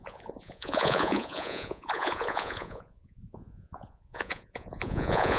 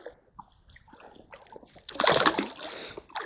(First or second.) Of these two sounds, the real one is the second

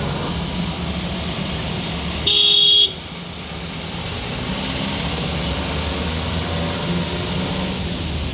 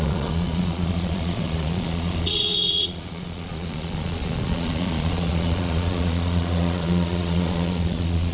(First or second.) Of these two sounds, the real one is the first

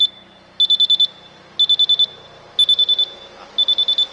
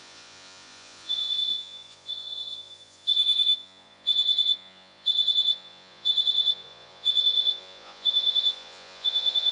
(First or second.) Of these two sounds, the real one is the first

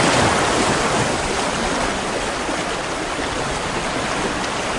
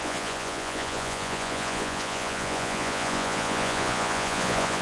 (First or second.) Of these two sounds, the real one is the first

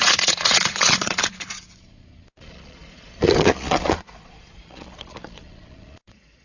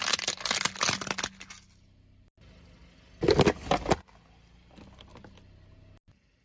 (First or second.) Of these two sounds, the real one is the second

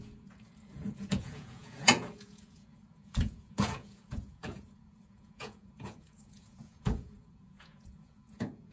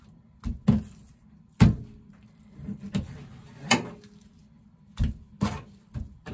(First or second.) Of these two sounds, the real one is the second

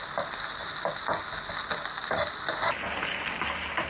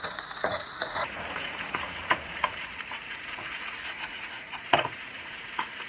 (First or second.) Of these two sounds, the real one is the first